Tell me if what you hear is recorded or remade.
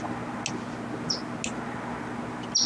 recorded